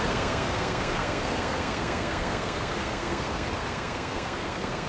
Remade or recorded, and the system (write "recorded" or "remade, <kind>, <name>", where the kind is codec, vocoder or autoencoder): remade, codec, SNAC